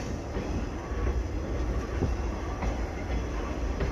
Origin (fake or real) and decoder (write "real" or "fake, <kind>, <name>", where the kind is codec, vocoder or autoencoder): real